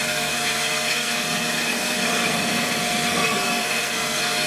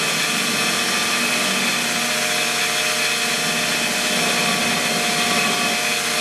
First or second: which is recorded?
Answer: second